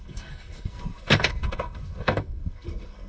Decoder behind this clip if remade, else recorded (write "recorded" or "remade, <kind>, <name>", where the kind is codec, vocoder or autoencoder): remade, codec, SNAC